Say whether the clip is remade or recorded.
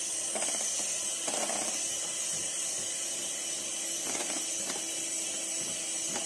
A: recorded